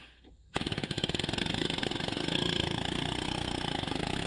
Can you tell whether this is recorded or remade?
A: remade